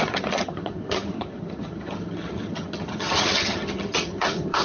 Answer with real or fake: fake